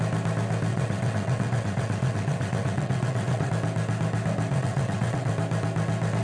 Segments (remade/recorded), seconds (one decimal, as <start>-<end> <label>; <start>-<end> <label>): 0.0-0.7 recorded; 0.7-3.5 remade; 3.5-4.5 recorded; 4.5-5.3 remade; 5.3-6.2 recorded